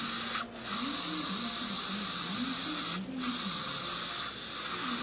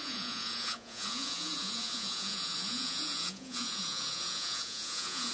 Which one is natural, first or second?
first